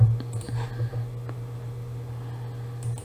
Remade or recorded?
recorded